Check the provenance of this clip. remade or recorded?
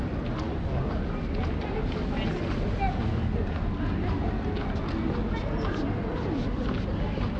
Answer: recorded